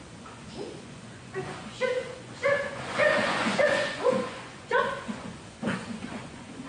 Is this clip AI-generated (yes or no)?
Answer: yes